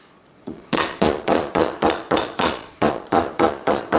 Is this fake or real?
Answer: fake